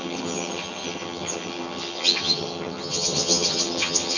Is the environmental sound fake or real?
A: fake